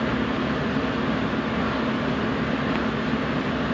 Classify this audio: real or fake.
real